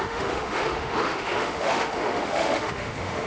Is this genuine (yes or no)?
no